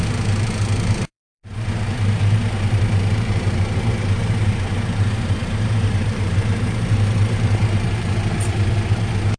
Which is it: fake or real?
fake